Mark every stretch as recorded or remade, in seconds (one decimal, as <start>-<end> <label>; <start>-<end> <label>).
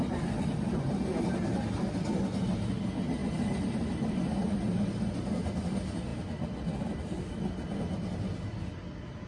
0.0-3.2 recorded; 3.2-4.2 remade; 4.2-6.1 recorded; 6.1-7.2 remade; 7.2-9.3 recorded